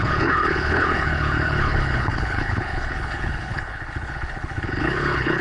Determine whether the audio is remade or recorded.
remade